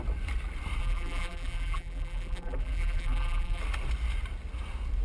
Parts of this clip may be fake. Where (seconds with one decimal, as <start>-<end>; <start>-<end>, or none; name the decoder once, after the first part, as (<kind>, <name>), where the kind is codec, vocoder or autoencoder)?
0.8-3.6 (vocoder, BigVGAN v2)